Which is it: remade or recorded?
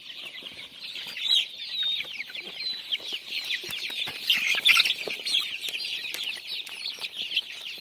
remade